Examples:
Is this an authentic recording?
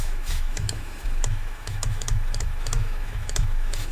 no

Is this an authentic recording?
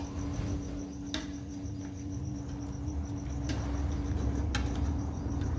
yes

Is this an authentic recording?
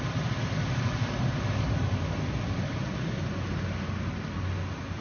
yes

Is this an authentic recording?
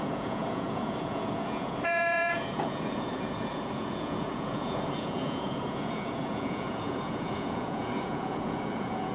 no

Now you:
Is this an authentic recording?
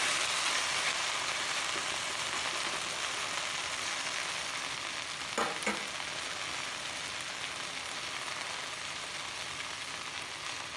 yes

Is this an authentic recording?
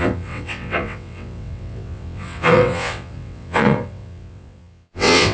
no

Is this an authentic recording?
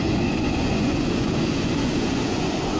no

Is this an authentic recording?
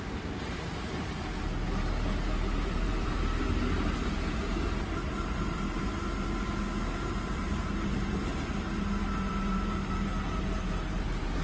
no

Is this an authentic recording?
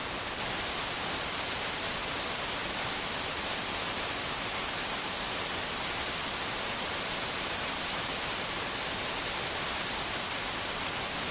yes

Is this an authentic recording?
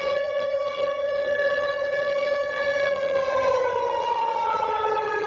no